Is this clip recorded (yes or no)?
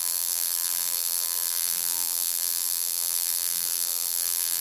no